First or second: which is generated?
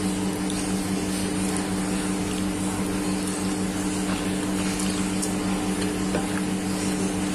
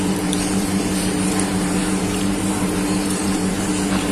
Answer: second